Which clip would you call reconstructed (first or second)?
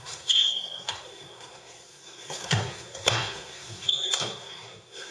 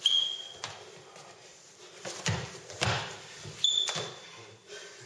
first